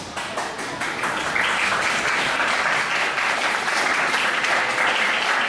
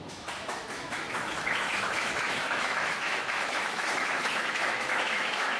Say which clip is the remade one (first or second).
second